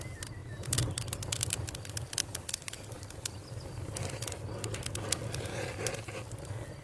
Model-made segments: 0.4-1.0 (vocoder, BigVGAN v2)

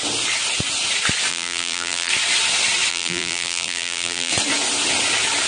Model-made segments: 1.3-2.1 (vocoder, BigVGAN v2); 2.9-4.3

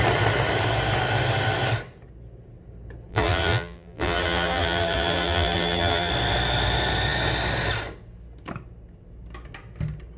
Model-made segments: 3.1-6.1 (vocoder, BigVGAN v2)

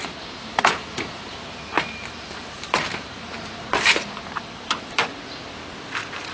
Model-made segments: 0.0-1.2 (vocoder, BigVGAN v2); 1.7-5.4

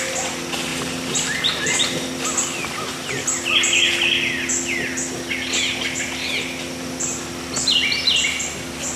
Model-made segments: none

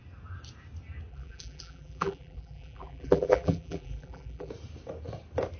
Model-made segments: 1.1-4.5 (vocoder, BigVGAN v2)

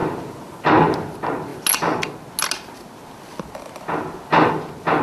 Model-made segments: none